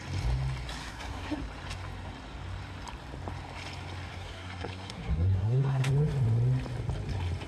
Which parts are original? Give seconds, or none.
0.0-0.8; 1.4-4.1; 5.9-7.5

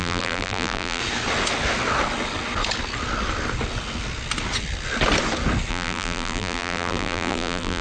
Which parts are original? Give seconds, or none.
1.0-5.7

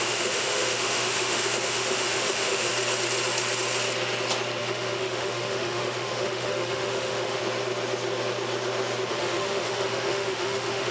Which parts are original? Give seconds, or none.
2.7-4.6; 7.4-9.1

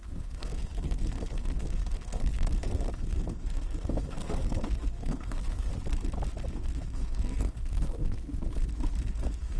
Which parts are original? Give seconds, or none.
5.7-6.5; 8.3-9.0

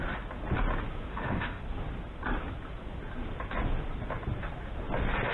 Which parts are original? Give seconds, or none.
0.0-1.1; 1.6-5.3

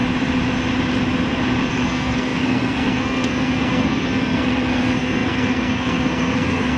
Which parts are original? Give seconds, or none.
0.0-1.7